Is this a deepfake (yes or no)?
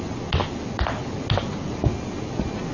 no